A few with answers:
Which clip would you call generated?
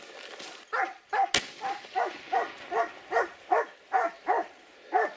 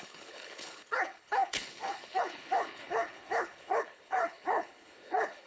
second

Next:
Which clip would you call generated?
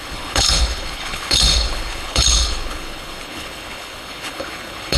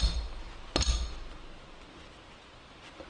first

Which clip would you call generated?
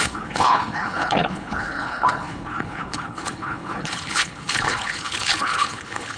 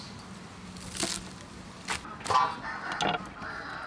first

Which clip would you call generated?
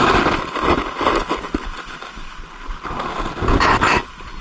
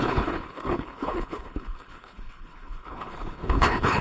second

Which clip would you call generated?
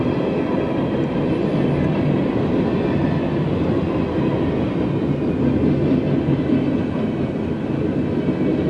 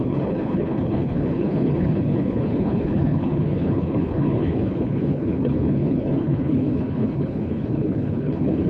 second